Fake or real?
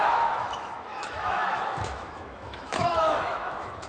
fake